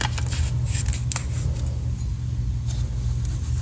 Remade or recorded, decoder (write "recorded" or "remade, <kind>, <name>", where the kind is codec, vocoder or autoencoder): recorded